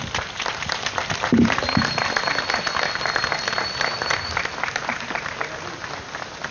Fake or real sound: real